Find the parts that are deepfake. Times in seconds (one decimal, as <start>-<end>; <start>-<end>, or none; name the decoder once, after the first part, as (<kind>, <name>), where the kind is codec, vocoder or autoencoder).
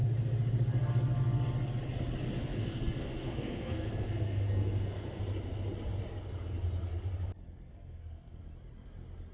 2.6-5.2 (codec, SNAC); 7.7-8.4